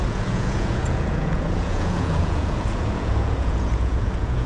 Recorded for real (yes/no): no